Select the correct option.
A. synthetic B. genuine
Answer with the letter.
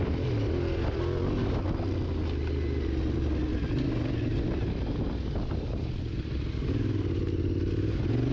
B